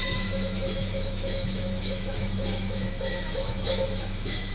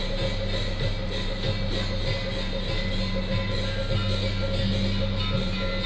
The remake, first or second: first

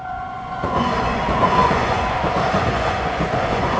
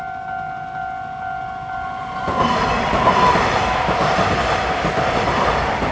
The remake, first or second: first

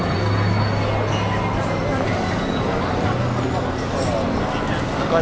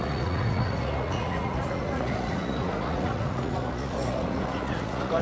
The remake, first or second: second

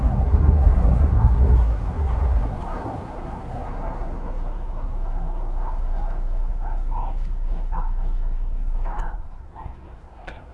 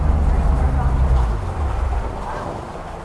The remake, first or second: first